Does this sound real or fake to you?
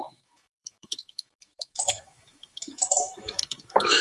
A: fake